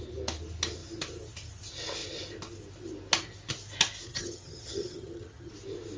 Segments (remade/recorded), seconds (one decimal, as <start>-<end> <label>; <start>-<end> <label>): 0.0-4.1 recorded; 4.1-5.5 remade; 5.5-6.0 recorded